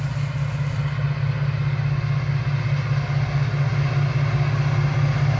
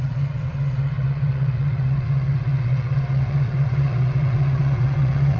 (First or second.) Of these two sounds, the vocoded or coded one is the second